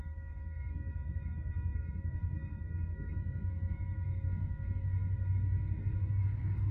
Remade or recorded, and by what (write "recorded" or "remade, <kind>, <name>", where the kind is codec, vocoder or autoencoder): remade, codec, SNAC